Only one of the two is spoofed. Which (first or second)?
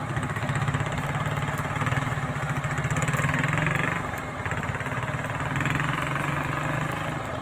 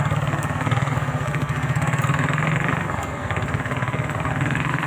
second